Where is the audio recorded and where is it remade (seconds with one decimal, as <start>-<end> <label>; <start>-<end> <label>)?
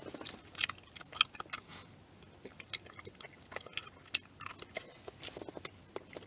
0.0-6.3 recorded